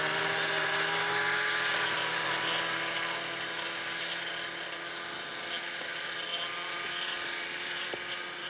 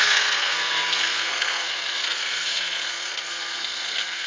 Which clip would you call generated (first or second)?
second